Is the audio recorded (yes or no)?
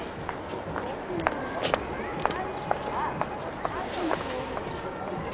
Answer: yes